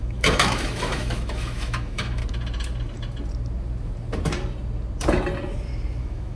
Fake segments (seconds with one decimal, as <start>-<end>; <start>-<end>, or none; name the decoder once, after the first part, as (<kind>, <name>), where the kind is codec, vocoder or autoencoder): 0.0-2.2 (autoencoder, DAC-VAE); 6.0-6.4